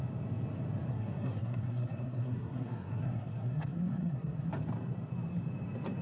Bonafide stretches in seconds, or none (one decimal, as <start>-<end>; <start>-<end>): 0.0-0.9; 4.5-6.0